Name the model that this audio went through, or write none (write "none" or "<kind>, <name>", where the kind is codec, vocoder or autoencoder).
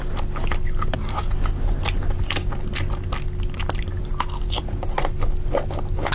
none